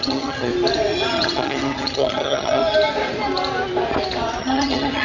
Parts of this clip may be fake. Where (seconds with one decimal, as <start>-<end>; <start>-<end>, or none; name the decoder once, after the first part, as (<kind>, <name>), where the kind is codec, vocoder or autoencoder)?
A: 0.0-0.5 (vocoder, HiFi-GAN); 1.1-2.6; 4.4-5.0